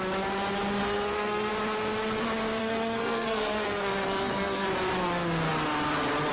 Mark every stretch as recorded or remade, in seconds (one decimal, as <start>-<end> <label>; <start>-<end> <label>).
0.0-0.8 recorded; 0.8-1.5 remade; 1.5-2.6 recorded; 2.6-4.7 remade; 4.7-6.3 recorded